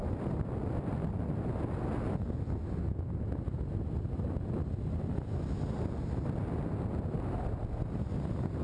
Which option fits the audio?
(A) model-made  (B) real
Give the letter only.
B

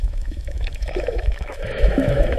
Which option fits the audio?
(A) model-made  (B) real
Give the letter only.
A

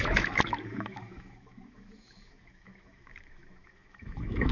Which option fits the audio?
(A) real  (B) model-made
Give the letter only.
B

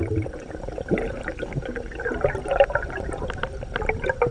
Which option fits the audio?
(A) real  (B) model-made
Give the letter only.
A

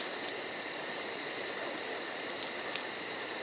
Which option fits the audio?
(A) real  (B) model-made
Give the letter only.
A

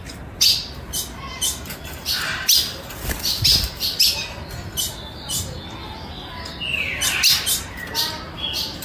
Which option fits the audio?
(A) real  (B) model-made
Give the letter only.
A